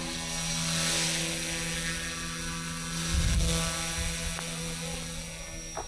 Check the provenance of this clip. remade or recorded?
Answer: recorded